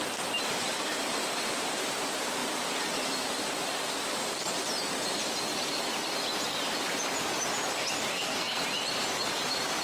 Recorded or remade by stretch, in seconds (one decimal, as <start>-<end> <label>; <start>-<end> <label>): 0.0-8.1 recorded; 8.1-8.6 remade; 8.6-9.8 recorded